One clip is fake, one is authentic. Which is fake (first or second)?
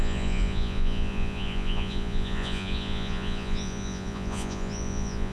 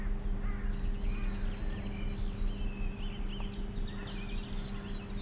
first